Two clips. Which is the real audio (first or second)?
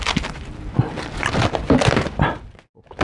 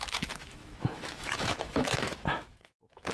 first